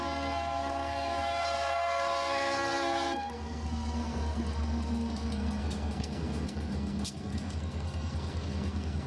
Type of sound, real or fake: fake